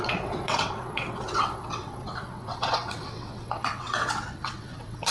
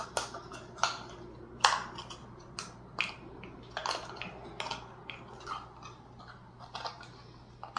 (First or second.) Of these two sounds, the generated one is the first